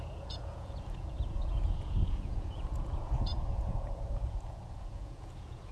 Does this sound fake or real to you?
fake